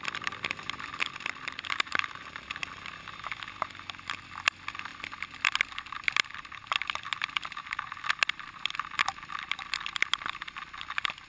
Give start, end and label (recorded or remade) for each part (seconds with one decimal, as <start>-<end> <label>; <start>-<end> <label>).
0.0-11.3 recorded